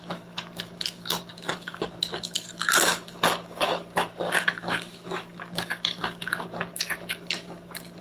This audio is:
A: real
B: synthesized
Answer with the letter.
B